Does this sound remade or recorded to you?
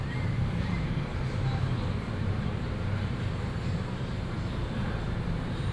remade